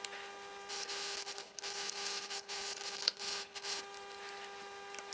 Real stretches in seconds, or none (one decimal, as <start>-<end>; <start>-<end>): 0.0-0.7; 3.8-5.1